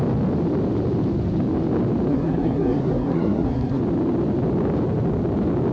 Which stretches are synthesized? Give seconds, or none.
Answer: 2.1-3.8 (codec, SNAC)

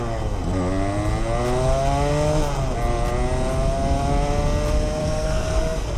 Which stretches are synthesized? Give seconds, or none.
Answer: 5.0-6.0 (codec, SNAC)